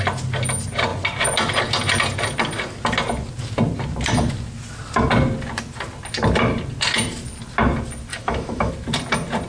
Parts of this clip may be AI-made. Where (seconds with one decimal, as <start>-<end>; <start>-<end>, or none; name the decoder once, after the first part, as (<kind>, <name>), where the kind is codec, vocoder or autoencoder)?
8.1-8.7 (autoencoder, DAC-VAE)